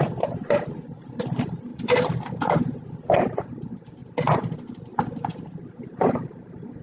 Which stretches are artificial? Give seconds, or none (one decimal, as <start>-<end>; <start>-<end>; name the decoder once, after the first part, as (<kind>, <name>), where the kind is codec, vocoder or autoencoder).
0.0-4.0 (vocoder, BigVGAN v2); 5.7-6.8